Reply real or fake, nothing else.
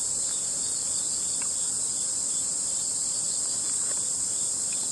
real